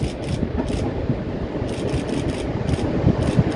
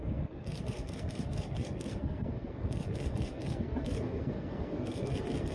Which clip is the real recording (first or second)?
first